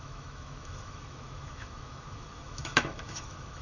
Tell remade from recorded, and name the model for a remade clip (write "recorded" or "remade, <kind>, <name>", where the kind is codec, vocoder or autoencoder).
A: remade, autoencoder, DAC-VAE